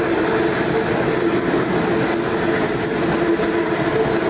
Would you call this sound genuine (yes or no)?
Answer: yes